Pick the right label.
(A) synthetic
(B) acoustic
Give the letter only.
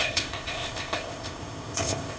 A